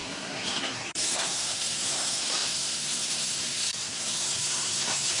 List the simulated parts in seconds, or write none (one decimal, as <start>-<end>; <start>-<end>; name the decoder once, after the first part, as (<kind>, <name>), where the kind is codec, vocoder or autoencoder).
0.0-5.2 (codec, SNAC)